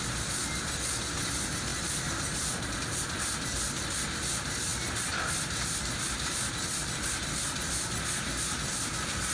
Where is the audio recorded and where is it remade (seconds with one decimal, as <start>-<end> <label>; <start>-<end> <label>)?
0.0-9.3 recorded